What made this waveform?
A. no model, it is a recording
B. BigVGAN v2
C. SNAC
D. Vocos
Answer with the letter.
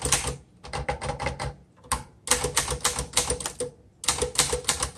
A